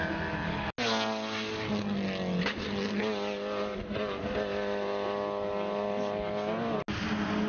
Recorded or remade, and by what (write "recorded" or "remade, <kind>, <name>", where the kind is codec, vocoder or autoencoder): recorded